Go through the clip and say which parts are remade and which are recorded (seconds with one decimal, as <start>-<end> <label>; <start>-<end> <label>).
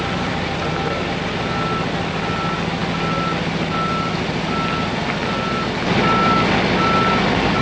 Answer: 0.0-7.6 recorded